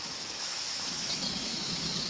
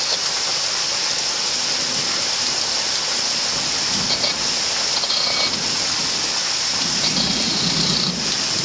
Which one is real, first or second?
second